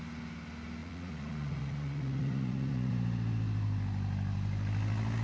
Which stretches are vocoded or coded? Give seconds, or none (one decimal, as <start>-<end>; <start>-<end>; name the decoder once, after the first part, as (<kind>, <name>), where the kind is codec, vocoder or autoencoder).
0.8-2.9 (vocoder, Vocos)